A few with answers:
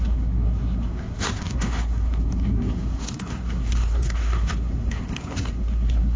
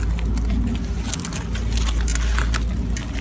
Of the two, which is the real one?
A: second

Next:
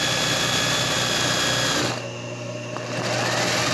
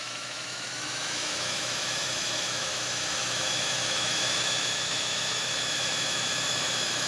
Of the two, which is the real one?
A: first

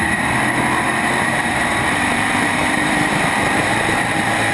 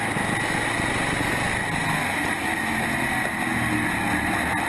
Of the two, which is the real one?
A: second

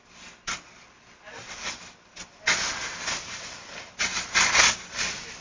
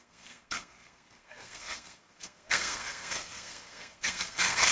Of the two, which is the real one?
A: first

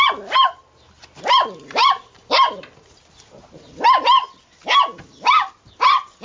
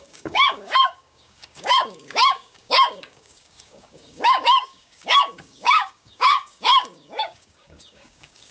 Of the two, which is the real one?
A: first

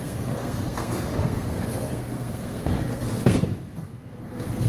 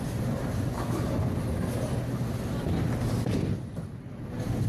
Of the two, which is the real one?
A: second